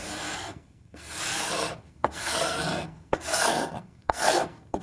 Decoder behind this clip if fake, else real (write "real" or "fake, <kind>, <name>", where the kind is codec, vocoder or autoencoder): fake, codec, SNAC